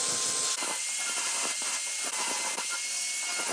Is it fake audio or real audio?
real